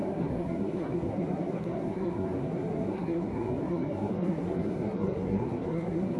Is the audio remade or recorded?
remade